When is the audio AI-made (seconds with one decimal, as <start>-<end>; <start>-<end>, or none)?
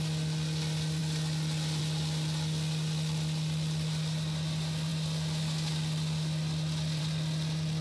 none